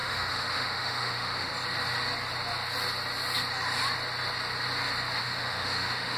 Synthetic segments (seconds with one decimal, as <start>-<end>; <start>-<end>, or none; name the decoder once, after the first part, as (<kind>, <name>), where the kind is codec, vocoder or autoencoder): 0.0-1.5 (autoencoder, DAC-VAE); 5.2-6.2